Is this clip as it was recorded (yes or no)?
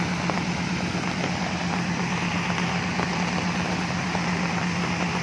yes